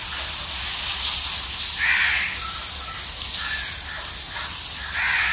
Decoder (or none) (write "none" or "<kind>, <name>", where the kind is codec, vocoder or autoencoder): none